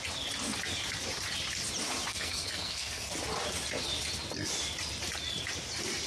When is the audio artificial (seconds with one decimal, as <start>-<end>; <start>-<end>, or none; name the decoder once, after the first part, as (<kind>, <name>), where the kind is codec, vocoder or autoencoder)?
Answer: 2.1-3.1 (codec, SNAC)